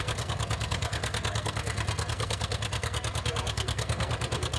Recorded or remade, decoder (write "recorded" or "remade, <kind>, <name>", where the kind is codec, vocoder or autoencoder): remade, codec, SNAC